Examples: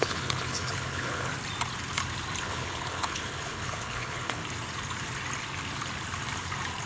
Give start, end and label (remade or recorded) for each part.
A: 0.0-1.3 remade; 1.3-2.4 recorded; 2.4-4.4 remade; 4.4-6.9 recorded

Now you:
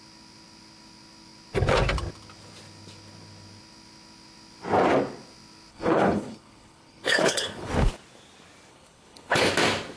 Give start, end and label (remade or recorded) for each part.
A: 0.0-5.7 recorded; 5.7-7.7 remade; 7.7-8.7 recorded; 8.7-9.5 remade; 9.5-10.0 recorded

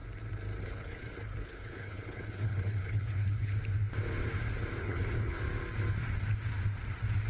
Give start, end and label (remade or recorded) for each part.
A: 0.0-0.6 recorded; 0.6-3.5 remade; 3.5-4.8 recorded; 4.8-5.4 remade; 5.4-7.3 recorded

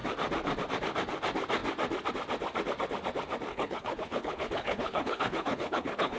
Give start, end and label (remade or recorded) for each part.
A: 0.0-3.5 recorded; 3.5-6.2 remade

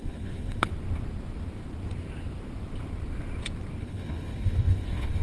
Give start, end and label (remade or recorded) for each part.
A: 0.0-0.7 remade; 0.7-3.8 recorded; 3.8-5.2 remade